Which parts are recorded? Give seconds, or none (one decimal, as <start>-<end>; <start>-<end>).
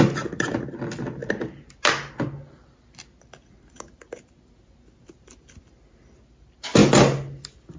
0.0-7.8